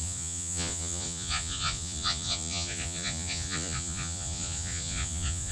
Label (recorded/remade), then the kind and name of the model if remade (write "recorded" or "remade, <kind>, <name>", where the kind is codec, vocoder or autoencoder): remade, vocoder, Vocos